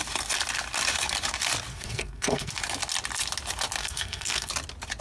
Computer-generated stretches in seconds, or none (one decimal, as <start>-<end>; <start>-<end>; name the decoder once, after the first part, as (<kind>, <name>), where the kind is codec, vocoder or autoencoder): 1.7-2.5 (codec, SNAC); 3.8-4.5